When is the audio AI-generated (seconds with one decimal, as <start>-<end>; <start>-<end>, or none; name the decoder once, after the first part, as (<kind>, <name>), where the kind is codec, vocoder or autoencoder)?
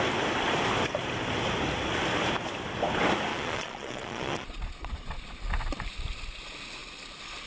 3.3-5.4 (vocoder, Vocos)